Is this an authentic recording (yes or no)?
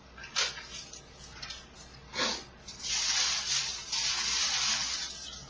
yes